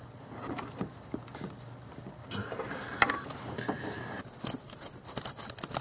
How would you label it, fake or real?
real